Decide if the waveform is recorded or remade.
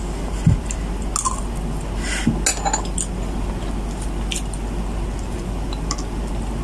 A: recorded